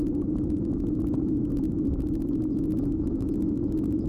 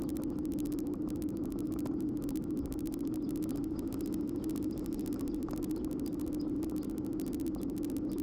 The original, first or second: second